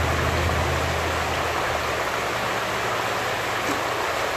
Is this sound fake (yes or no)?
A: no